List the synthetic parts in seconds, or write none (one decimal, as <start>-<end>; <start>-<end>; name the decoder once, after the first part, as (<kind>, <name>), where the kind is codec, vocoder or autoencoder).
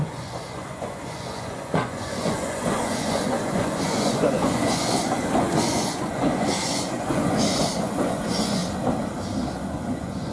0.0-8.6 (vocoder, Vocos); 9.5-10.3